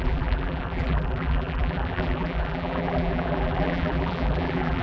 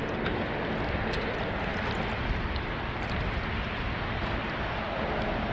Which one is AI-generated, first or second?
first